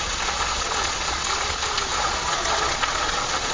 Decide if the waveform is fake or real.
fake